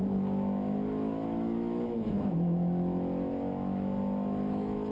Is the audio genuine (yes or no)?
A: no